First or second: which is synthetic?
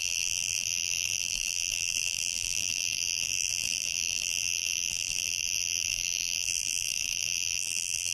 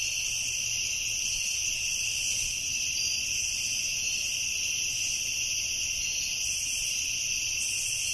first